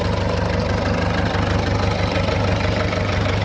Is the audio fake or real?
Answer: real